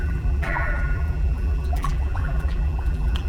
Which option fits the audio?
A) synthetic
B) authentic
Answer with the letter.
A